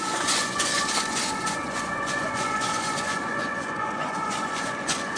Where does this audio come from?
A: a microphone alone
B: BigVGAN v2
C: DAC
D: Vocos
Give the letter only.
D